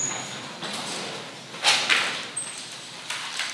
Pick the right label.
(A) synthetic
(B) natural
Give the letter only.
B